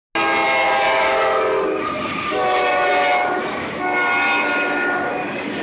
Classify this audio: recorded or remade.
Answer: recorded